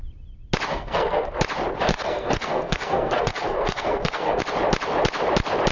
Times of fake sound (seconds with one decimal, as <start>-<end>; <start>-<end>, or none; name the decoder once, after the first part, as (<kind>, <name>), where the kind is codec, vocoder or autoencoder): 0.7-1.3 (codec, SNAC); 1.9-4.4